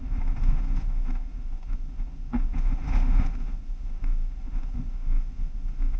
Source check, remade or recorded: remade